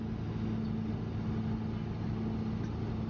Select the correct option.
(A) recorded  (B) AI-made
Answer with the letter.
A